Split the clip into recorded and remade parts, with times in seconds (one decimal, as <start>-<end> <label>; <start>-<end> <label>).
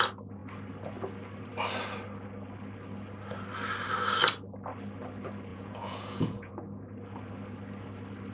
0.0-5.5 recorded; 5.5-6.5 remade; 6.5-8.3 recorded